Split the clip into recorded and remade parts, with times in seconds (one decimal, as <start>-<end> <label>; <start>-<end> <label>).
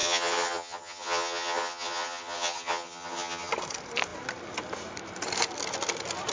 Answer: 0.0-3.5 remade; 3.5-6.3 recorded